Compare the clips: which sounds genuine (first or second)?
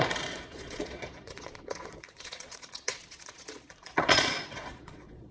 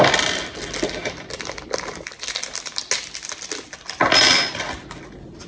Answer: second